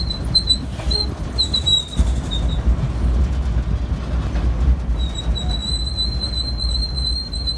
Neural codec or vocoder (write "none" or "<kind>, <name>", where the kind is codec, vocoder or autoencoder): none